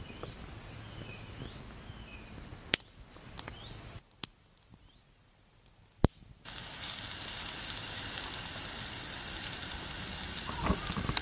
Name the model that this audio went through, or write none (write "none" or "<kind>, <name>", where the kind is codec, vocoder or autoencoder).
none